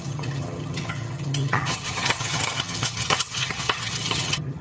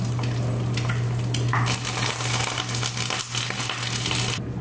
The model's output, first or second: first